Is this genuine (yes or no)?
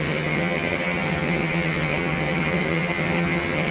no